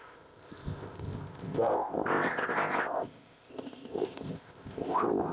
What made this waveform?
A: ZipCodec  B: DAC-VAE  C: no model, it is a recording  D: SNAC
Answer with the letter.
A